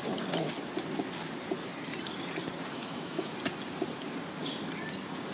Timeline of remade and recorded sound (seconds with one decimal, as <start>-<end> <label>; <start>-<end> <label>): 0.0-2.7 recorded; 2.7-3.3 remade; 3.3-5.3 recorded